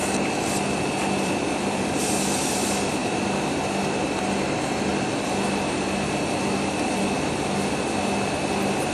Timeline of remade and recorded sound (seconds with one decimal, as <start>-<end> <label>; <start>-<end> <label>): 0.0-2.0 remade; 2.0-3.0 recorded; 3.0-7.0 remade; 7.0-8.9 recorded